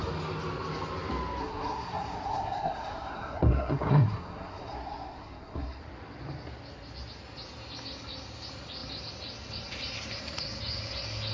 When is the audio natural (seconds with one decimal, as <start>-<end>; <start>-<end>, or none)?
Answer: 0.0-1.4; 5.8-11.3